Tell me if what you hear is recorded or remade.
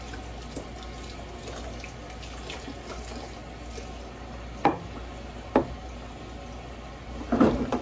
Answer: recorded